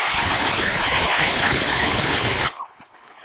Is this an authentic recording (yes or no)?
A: no